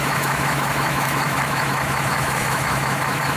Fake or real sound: fake